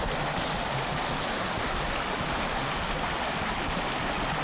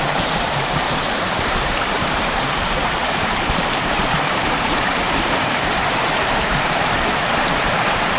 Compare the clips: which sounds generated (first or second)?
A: second